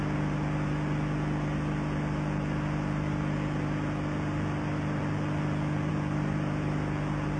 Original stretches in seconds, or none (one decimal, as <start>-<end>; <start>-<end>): 0.0-7.4